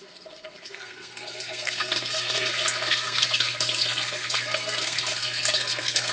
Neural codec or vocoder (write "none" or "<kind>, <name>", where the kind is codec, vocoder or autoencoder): codec, SNAC